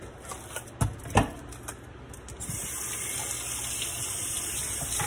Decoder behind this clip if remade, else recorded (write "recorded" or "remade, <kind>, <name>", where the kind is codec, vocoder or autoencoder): recorded